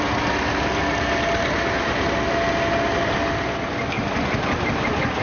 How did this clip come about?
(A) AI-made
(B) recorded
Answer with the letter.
B